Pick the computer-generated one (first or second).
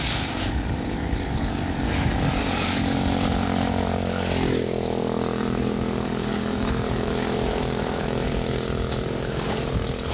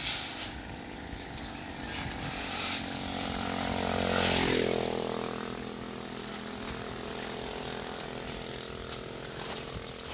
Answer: first